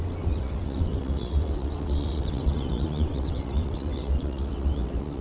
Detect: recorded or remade remade